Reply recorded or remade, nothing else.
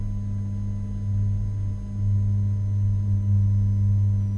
recorded